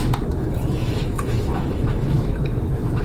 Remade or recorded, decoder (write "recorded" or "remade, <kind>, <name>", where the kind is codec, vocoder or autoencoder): remade, autoencoder, DAC-VAE